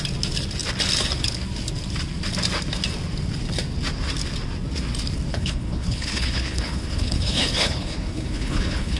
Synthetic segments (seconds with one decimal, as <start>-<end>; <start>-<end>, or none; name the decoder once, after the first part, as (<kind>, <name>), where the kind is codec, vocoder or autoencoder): 5.3-9.0 (codec, HILCodec)